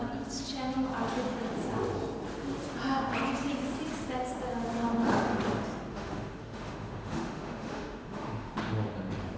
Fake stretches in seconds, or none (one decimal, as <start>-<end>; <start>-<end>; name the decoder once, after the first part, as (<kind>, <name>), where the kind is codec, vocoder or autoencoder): 5.9-8.5 (autoencoder, DAC-VAE)